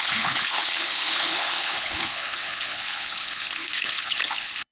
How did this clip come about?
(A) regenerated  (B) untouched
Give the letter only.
A